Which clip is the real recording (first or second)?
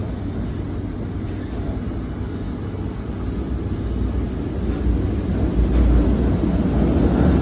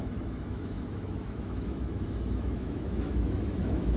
first